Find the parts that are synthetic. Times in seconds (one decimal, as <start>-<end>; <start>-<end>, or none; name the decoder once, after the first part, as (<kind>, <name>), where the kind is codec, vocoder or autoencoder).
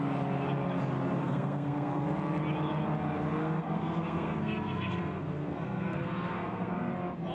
1.2-2.0 (codec, SNAC); 3.4-6.8